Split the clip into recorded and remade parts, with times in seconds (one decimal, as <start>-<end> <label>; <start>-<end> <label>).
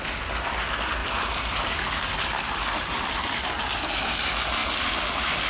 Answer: 0.0-1.0 recorded; 1.0-3.1 remade; 3.1-4.6 recorded; 4.6-5.1 remade; 5.1-5.5 recorded